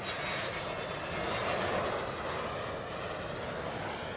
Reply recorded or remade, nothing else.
recorded